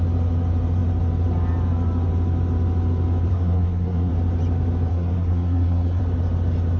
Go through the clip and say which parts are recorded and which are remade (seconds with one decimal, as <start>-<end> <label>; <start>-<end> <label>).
0.0-3.3 recorded; 3.3-4.1 remade; 4.1-4.9 recorded; 4.9-6.0 remade; 6.0-6.8 recorded